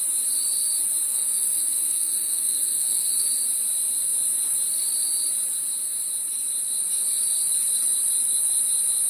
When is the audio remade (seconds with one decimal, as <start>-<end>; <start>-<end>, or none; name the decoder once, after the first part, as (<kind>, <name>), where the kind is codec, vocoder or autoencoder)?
1.1-3.3 (codec, SNAC)